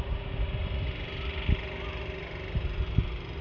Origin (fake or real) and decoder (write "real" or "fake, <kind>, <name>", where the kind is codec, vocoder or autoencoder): real